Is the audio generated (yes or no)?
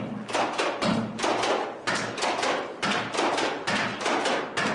no